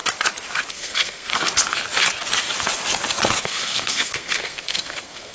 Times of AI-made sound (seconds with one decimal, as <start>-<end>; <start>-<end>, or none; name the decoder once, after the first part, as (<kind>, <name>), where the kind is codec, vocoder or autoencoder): 0.7-1.3 (codec, SNAC); 3.4-5.3